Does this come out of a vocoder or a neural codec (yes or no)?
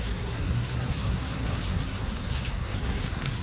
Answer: yes